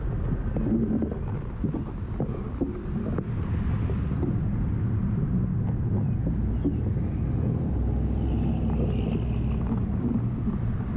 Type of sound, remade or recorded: recorded